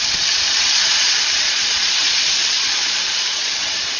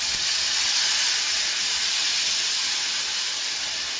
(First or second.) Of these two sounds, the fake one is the first